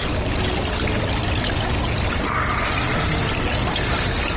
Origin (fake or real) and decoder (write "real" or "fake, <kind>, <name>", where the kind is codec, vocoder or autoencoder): real